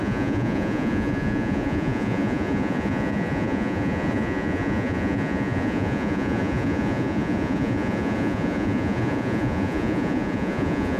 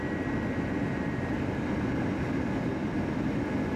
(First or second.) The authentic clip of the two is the second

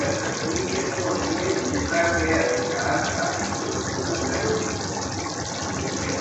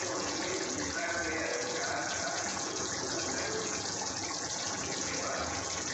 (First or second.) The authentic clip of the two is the first